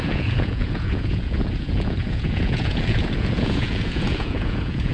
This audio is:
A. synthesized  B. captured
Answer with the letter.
A